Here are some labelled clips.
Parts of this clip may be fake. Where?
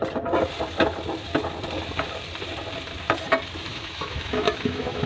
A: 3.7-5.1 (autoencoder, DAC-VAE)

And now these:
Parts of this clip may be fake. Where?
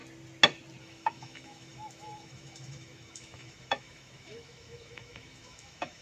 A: 0.8-6.0 (autoencoder, DAC-VAE)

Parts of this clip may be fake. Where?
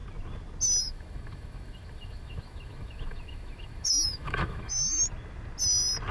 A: 0.8-5.0 (autoencoder, DAC-VAE)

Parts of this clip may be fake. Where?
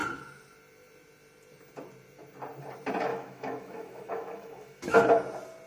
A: 3.1-5.0 (autoencoder, DAC-VAE)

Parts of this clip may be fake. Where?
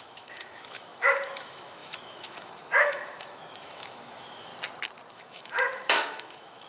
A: 0.0-4.5 (autoencoder, DAC-VAE); 5.1-6.7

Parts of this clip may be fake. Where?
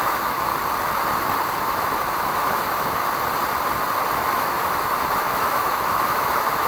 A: 0.0-0.5 (autoencoder, DAC-VAE); 1.6-3.0; 4.3-6.7